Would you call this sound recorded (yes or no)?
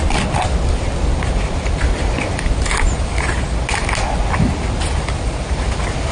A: yes